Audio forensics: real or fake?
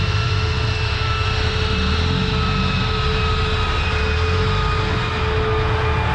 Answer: real